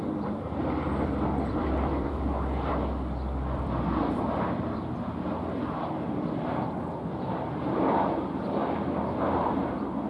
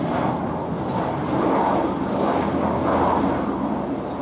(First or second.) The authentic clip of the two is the second